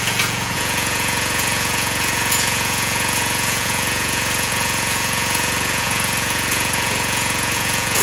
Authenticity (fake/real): fake